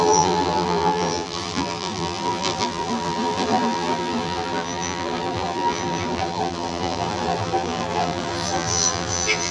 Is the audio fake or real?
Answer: fake